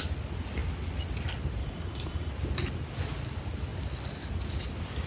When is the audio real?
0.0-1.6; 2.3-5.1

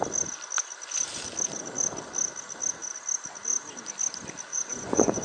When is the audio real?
0.0-4.5

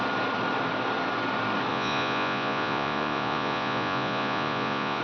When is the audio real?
0.0-1.7

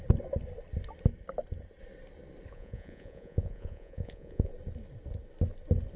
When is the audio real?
0.0-2.5; 4.5-6.0